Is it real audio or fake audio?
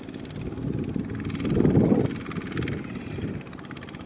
real